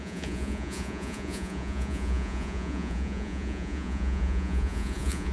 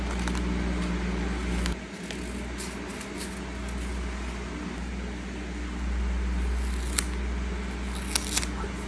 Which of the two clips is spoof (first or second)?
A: first